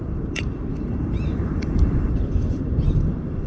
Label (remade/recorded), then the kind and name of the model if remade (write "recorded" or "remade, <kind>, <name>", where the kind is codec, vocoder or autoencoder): remade, vocoder, BigVGAN v2